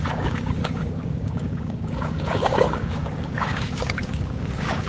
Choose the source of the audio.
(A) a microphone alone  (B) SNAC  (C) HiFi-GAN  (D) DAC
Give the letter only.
D